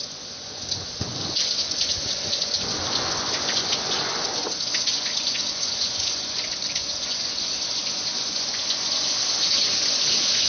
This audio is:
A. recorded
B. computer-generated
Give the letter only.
B